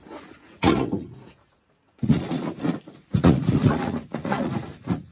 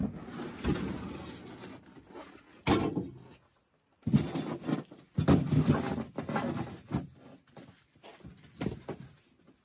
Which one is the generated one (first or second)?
first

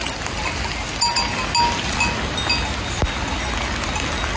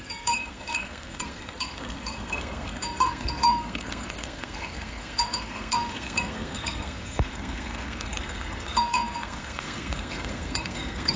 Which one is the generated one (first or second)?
second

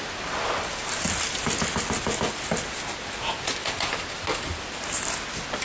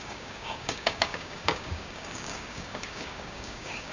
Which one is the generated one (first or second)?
second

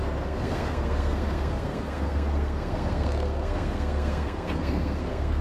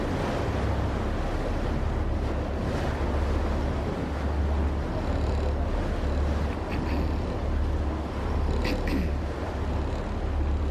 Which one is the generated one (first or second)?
first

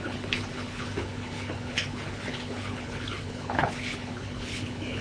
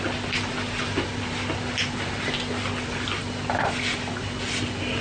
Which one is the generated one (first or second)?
first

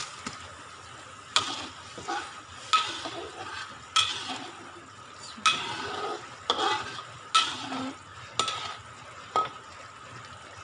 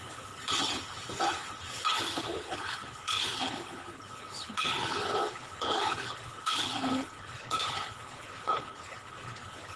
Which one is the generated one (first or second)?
second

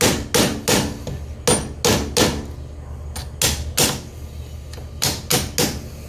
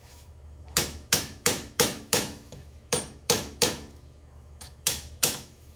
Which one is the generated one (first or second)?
second